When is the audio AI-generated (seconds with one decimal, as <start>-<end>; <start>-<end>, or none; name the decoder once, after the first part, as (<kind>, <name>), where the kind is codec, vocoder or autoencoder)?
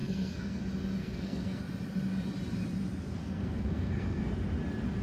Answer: 0.0-0.6 (codec, SNAC); 1.0-1.6; 3.2-4.2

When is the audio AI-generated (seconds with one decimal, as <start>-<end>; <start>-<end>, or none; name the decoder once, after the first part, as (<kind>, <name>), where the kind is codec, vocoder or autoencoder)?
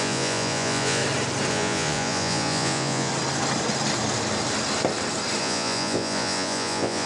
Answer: 0.0-1.0 (vocoder, Vocos); 1.5-3.1; 5.4-7.1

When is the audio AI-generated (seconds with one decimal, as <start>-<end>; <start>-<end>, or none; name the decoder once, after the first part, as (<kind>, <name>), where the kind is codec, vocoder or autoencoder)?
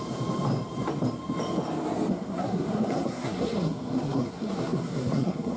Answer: 2.1-5.6 (codec, SNAC)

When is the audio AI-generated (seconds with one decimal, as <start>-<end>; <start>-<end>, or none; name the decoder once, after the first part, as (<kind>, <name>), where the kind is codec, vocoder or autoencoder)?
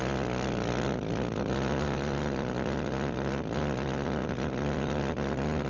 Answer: none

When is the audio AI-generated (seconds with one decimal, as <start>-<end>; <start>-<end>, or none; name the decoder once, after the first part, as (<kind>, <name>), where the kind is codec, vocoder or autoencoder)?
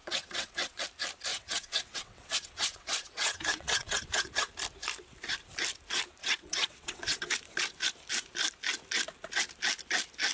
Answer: 0.0-0.8 (vocoder, WaveNeXt); 1.3-4.5; 6.2-7.2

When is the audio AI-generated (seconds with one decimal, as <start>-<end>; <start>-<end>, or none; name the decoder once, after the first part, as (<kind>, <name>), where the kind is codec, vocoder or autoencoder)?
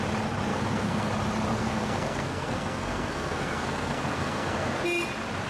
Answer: 0.5-1.1 (codec, SNAC); 1.5-4.8